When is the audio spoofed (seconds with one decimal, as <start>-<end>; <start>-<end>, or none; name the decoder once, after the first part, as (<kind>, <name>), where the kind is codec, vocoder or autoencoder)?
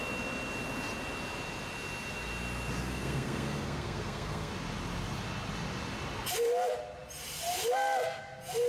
2.8-4.5 (codec, SNAC)